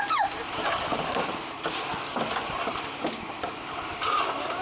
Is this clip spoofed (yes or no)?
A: no